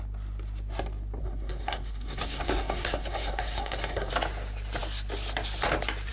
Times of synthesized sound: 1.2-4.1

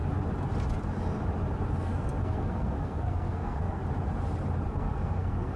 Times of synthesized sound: 1.8-3.8; 4.7-5.6

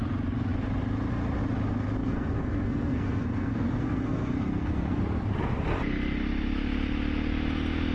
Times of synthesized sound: 2.0-5.0

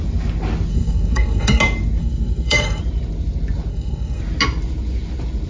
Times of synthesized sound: 0.7-1.6; 2.0-2.8; 3.7-4.2

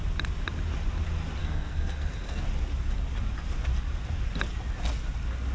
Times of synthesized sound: 1.4-2.4

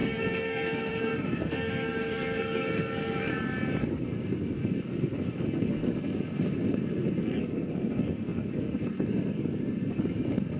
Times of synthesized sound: 0.0-3.3; 3.8-10.6